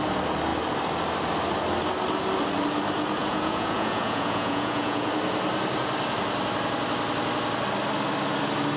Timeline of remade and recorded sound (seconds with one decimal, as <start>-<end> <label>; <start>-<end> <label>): 0.0-3.2 recorded; 3.2-5.1 remade; 5.1-8.8 recorded